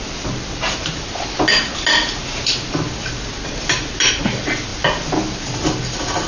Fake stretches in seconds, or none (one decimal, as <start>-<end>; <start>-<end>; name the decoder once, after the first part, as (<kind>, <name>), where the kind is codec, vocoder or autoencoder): none